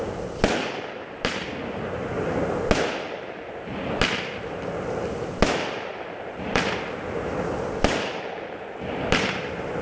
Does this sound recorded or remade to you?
recorded